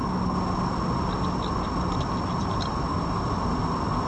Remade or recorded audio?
recorded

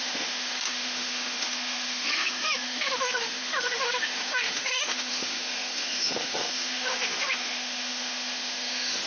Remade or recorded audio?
remade